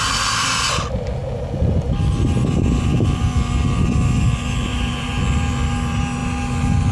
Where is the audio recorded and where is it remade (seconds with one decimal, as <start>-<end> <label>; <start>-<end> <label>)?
0.0-4.7 recorded; 4.7-5.2 remade; 5.2-6.9 recorded